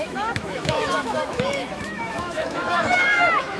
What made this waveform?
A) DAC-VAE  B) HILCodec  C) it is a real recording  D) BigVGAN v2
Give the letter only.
A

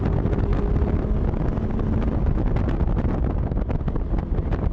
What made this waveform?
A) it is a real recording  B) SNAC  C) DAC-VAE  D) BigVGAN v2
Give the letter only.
A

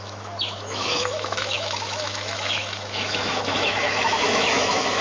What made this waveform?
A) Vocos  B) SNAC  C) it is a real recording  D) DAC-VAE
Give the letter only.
D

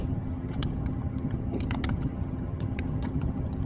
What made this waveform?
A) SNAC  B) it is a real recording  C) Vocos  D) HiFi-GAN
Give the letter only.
D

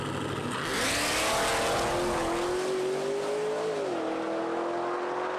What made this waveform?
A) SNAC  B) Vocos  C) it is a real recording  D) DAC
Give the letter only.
C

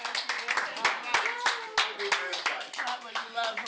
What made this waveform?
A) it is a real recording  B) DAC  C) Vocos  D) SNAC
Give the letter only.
A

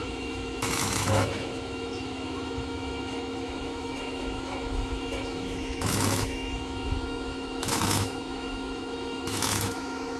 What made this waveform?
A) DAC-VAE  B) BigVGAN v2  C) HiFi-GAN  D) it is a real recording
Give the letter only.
A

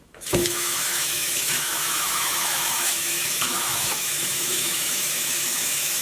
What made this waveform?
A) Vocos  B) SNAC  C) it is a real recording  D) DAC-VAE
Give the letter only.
D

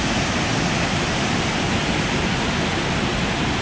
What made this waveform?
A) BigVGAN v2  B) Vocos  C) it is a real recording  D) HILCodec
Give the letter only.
C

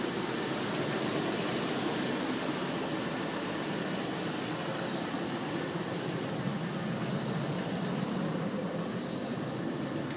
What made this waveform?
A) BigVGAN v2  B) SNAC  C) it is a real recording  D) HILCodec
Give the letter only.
C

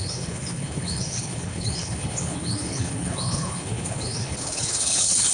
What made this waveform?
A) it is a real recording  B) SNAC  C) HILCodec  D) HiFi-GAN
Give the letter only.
C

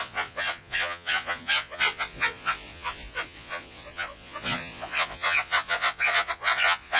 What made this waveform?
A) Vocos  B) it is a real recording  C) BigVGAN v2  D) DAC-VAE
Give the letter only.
A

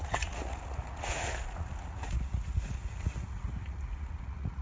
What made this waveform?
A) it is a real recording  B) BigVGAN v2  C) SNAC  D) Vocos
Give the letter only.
D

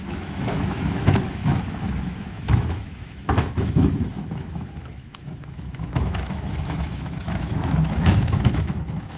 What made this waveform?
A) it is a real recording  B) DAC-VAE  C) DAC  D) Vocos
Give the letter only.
B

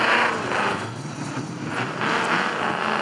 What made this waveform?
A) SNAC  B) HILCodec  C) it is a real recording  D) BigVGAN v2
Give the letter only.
C